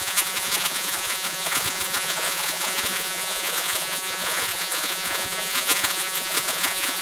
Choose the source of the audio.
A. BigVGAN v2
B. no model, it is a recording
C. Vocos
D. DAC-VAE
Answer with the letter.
C